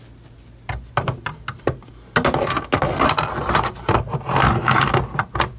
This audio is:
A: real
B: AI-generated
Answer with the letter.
A